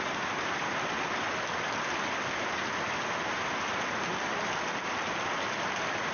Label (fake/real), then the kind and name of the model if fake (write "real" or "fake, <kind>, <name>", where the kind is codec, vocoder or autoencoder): real